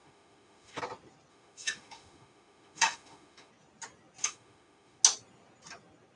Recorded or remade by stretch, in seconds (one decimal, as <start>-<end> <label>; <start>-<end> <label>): 0.0-0.8 remade; 0.8-1.3 recorded; 1.3-3.5 remade; 3.5-4.2 recorded; 4.2-5.0 remade; 5.0-6.2 recorded